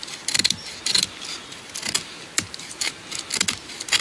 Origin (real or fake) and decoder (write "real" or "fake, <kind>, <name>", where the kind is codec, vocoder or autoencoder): real